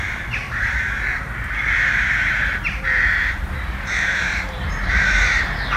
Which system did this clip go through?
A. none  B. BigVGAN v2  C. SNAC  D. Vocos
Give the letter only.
B